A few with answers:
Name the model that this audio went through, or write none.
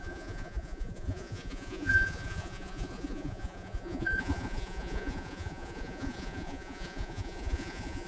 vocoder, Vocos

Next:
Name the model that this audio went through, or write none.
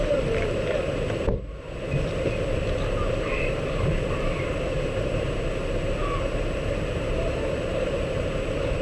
vocoder, BigVGAN v2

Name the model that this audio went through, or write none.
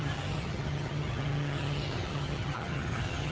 vocoder, HiFi-GAN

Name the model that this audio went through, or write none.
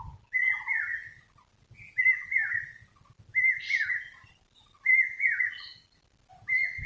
none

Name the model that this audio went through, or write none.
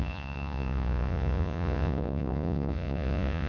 vocoder, Vocos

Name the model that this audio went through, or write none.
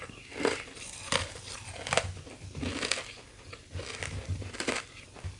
none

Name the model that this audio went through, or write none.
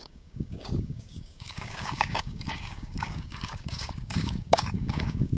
codec, DAC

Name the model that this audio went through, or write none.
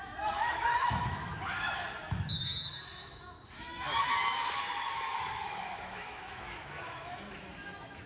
autoencoder, DAC-VAE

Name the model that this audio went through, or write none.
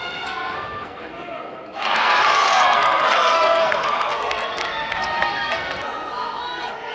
codec, SNAC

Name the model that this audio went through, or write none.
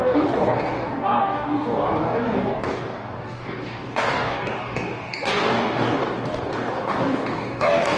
codec, DAC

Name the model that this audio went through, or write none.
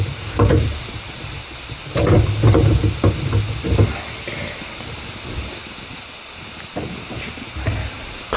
none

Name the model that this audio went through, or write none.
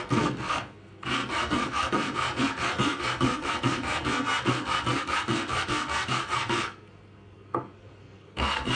codec, SNAC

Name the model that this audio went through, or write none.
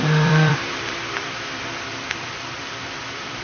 vocoder, BigVGAN v2